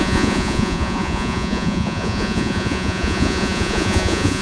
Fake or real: fake